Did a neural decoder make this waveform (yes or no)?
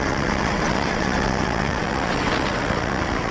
yes